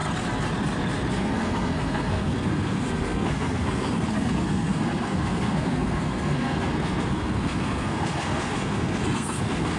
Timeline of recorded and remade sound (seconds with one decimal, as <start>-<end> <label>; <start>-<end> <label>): 0.0-1.1 recorded; 1.1-9.8 remade